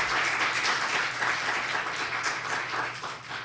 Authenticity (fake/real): real